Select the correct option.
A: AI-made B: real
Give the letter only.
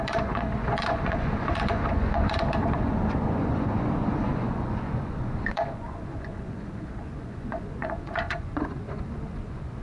A